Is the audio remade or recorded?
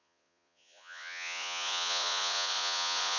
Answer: remade